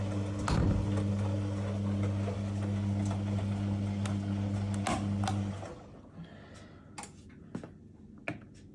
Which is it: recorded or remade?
recorded